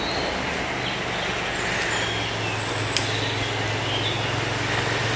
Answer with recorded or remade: recorded